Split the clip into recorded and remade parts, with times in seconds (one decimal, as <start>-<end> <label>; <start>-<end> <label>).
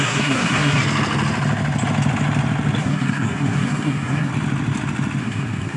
0.0-0.8 remade; 0.8-2.8 recorded; 2.8-4.3 remade; 4.3-5.2 recorded; 5.2-5.8 remade